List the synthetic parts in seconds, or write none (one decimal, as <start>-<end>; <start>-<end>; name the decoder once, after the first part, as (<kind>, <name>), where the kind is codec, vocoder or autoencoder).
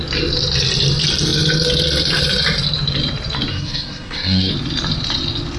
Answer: 3.5-4.5 (codec, SNAC)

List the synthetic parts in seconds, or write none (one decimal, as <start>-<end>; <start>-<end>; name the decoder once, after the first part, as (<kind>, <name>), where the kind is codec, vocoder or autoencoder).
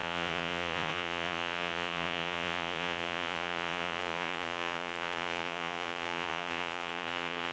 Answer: 0.0-7.5 (vocoder, Vocos)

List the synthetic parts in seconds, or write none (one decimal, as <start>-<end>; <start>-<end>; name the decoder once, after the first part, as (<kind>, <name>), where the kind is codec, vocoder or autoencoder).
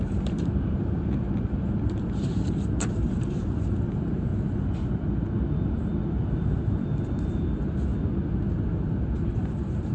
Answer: 0.0-4.3 (vocoder, BigVGAN v2); 6.3-7.9; 8.4-9.9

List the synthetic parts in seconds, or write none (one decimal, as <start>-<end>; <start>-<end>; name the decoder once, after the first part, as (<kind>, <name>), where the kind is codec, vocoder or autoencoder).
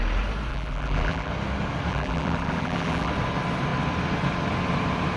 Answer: 0.5-1.3 (vocoder, BigVGAN v2); 1.9-3.1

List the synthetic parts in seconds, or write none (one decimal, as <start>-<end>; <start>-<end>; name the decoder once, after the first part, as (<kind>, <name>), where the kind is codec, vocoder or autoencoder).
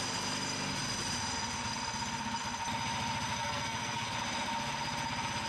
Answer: 3.4-4.1 (codec, SNAC)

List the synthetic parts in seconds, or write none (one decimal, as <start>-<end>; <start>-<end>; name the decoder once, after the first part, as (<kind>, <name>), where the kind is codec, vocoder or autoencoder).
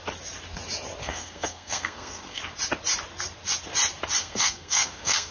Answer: 1.0-2.4 (codec, SNAC); 4.2-5.3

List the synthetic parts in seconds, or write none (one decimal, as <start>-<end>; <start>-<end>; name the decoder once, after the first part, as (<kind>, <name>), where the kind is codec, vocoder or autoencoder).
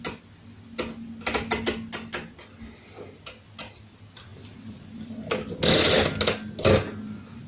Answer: none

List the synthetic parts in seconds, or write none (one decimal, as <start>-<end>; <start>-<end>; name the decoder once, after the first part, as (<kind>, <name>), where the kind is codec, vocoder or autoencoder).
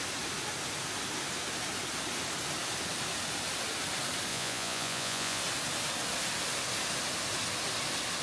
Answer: 4.3-5.4 (vocoder, Vocos)